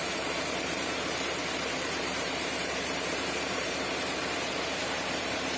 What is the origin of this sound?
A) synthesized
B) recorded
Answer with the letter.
A